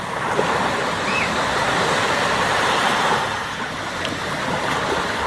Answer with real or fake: fake